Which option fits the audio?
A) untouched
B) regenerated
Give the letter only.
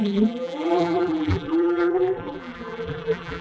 B